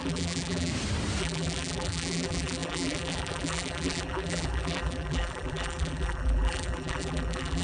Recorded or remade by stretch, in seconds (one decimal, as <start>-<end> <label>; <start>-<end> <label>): 0.0-0.7 remade; 0.7-1.2 recorded; 1.2-7.6 remade